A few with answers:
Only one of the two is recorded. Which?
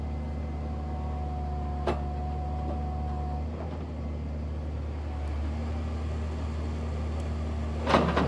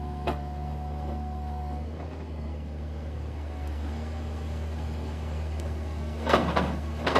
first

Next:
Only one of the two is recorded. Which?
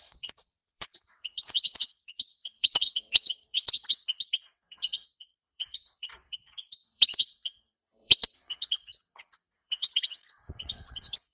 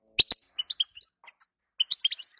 second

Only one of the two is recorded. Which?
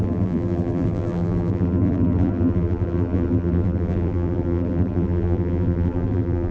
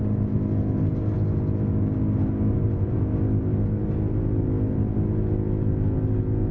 second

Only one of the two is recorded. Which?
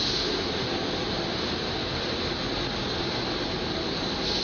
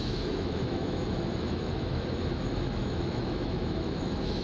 first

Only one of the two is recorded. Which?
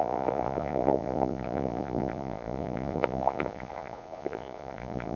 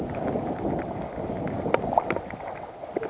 second